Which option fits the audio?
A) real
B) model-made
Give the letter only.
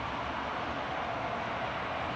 A